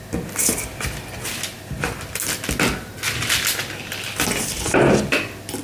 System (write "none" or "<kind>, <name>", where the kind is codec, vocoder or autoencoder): none